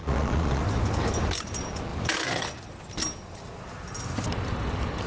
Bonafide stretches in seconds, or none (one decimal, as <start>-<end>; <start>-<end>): 0.6-5.1